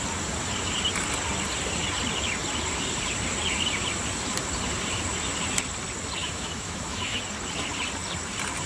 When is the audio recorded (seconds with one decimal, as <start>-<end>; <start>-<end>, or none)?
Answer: 0.0-6.2; 7.2-8.7